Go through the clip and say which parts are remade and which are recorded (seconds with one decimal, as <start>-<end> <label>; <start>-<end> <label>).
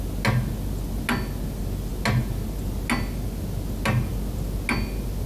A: 0.0-5.3 recorded